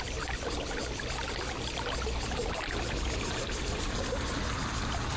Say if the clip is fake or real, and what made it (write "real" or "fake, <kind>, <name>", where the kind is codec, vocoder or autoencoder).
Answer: real